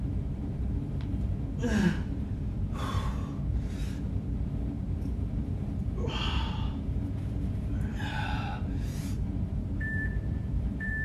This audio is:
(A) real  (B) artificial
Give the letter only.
B